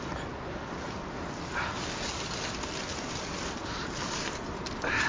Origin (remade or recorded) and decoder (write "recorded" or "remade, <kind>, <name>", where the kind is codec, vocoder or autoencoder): recorded